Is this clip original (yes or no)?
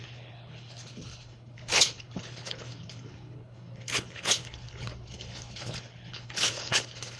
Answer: no